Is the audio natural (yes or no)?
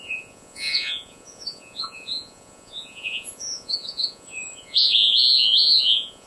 no